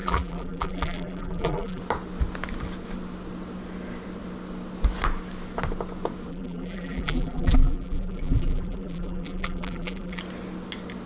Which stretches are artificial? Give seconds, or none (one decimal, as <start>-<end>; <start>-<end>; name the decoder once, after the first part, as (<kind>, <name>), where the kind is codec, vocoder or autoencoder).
0.0-1.8 (vocoder, BigVGAN v2); 6.3-10.2